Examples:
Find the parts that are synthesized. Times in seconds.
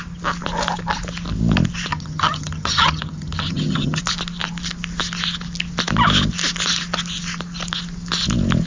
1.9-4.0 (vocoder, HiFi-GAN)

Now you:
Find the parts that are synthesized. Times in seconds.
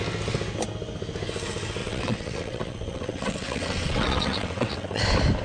1.8-5.0 (vocoder, WaveNeXt)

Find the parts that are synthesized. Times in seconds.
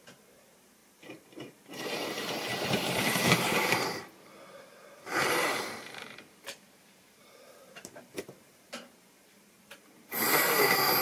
0.0-11.0 (vocoder, BigVGAN v2)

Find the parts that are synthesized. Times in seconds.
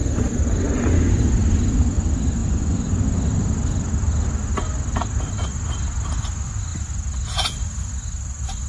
2.4-2.9 (vocoder, Vocos)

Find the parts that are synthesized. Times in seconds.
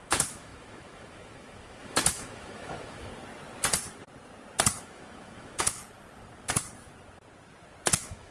0.0-3.1 (autoencoder, DAC-VAE); 4.8-5.8; 7.9-8.3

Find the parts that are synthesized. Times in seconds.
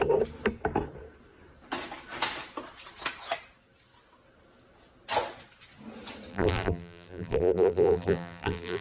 6.3-8.8 (vocoder, BigVGAN v2)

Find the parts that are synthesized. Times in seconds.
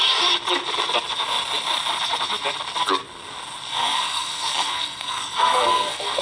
3.7-6.2 (codec, SNAC)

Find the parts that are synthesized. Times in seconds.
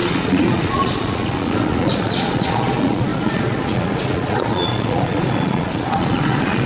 0.0-6.7 (vocoder, Vocos)